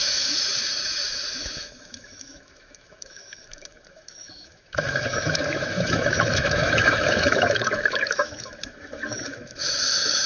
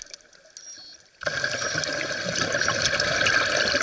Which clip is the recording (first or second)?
second